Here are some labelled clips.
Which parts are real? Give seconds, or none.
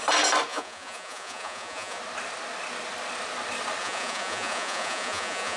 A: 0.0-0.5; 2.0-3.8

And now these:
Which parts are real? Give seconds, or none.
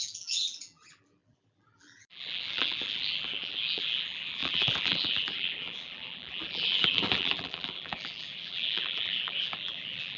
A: none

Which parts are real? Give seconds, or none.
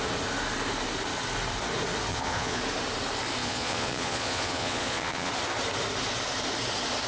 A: 0.0-2.1; 2.6-3.4; 5.3-7.1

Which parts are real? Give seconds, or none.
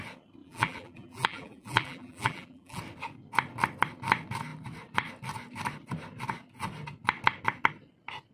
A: 0.0-0.4; 2.8-8.3